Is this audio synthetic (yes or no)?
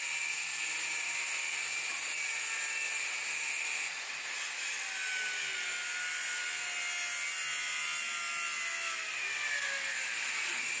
no